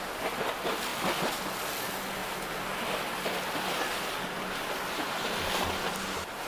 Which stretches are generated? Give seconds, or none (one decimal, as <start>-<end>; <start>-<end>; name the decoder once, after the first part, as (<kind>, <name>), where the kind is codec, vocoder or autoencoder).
none

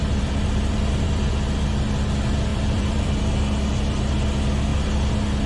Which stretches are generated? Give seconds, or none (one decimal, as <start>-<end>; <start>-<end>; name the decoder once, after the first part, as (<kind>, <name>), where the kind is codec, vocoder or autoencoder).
0.0-1.3 (vocoder, BigVGAN v2); 2.5-3.2

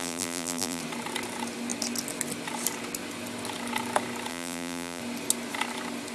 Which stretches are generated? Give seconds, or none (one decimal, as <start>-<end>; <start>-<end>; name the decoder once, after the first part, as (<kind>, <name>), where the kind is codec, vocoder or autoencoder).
0.0-0.8 (vocoder, BigVGAN v2); 4.3-5.0

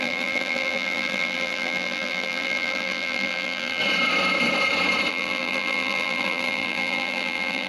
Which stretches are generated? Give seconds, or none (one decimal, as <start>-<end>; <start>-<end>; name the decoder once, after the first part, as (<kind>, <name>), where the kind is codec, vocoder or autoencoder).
0.0-3.8 (vocoder, BigVGAN v2); 5.1-7.7

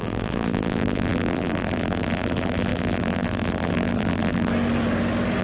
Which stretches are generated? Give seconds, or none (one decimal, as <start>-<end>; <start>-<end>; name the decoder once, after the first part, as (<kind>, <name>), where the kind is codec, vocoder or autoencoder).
0.0-4.5 (vocoder, BigVGAN v2)

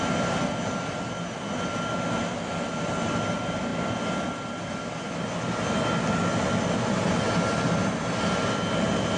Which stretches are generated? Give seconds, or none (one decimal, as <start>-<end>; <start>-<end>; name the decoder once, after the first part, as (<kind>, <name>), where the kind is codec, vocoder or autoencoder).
none

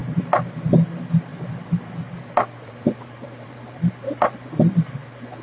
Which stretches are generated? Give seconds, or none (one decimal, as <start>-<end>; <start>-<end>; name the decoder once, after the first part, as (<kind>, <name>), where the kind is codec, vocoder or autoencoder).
1.3-4.5 (vocoder, BigVGAN v2)

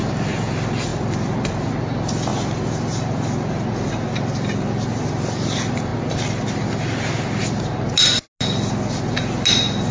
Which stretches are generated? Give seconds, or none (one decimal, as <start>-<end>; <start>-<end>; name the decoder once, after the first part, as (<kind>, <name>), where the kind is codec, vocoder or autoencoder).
0.9-1.7 (vocoder, BigVGAN v2)